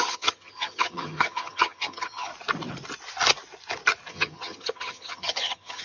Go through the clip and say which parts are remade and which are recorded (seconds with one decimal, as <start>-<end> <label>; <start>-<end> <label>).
0.0-2.3 remade; 2.3-4.1 recorded; 4.1-5.8 remade